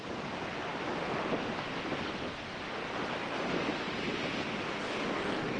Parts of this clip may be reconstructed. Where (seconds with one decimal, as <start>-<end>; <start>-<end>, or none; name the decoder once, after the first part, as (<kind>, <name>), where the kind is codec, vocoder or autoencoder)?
4.8-5.6 (codec, DAC)